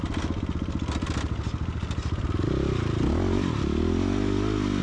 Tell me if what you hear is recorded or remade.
recorded